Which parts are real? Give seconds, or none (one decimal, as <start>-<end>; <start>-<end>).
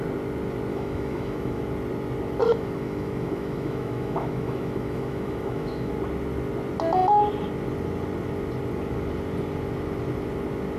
0.0-0.7; 1.6-2.5; 5.9-10.8